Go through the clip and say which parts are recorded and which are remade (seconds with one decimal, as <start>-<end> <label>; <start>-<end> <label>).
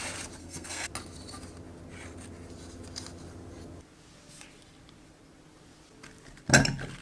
0.0-0.4 recorded; 0.4-0.9 remade; 0.9-7.0 recorded